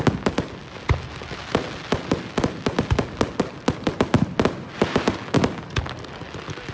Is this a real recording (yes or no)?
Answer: yes